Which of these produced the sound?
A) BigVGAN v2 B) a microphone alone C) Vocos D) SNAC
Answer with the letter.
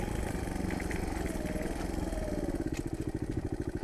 B